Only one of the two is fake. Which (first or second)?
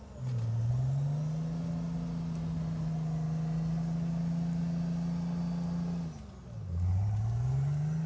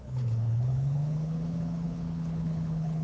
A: second